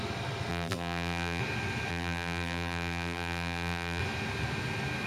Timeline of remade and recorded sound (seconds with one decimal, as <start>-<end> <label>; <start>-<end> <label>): 0.0-0.5 recorded; 0.5-1.4 remade; 1.4-1.9 recorded; 1.9-4.0 remade; 4.0-5.1 recorded